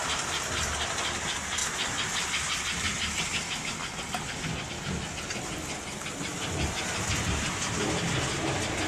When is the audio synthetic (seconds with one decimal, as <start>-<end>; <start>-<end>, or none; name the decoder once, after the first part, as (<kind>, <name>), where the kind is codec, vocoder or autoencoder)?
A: none